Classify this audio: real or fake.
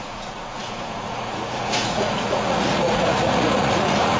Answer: fake